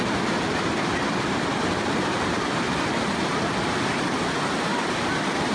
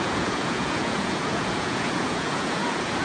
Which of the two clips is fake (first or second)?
second